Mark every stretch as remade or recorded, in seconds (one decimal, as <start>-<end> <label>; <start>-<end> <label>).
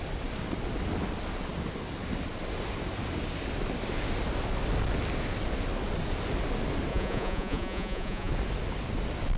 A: 0.0-6.9 recorded; 6.9-8.3 remade; 8.3-9.4 recorded